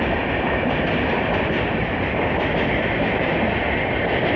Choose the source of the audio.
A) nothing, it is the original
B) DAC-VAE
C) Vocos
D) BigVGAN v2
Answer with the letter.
A